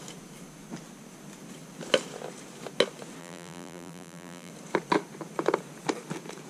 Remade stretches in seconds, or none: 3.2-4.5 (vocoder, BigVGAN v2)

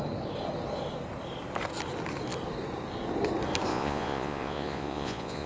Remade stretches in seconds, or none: 3.7-5.5 (vocoder, Vocos)

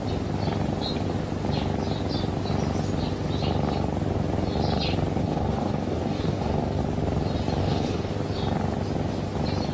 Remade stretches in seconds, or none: 5.2-6.8 (codec, DAC); 7.6-8.1

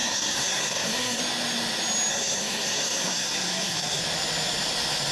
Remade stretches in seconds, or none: 0.0-1.2 (codec, SNAC); 2.1-4.0

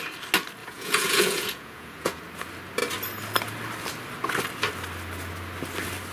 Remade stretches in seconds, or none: 0.6-2.2 (vocoder, Vocos)

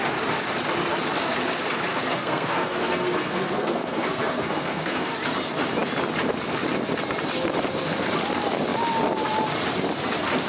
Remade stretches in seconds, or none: 1.9-5.1 (codec, SNAC)